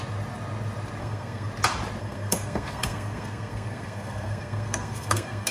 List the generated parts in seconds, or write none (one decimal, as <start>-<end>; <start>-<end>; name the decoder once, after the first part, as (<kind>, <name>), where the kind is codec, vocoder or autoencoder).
1.0-1.5 (codec, SNAC); 2.0-5.5